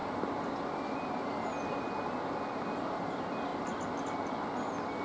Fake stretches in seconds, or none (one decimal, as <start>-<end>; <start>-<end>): none